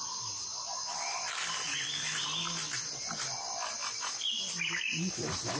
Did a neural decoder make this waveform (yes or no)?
no